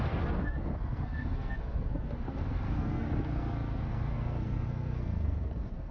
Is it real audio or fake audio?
fake